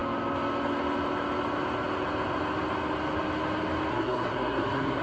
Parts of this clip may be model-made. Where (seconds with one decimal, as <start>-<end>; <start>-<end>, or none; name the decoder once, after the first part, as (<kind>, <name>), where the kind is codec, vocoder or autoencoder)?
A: 3.9-5.0 (codec, SNAC)